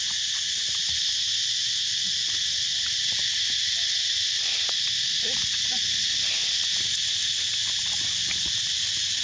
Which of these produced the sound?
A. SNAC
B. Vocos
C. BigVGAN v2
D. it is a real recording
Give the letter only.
D